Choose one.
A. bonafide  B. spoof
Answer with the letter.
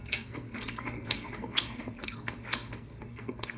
B